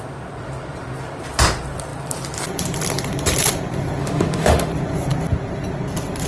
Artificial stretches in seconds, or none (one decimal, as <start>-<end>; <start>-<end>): 4.0-4.7